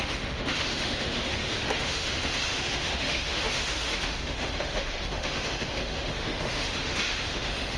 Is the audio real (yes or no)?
no